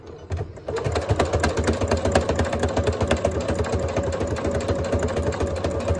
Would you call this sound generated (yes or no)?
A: no